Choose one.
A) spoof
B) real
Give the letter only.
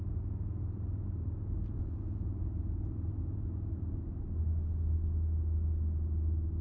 B